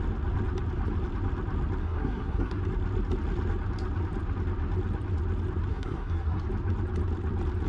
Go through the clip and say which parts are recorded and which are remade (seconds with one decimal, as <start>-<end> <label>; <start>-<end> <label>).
0.0-1.8 recorded; 1.8-2.6 remade; 2.6-5.7 recorded; 5.7-6.4 remade; 6.4-7.7 recorded